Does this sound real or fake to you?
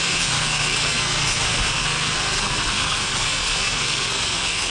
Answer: fake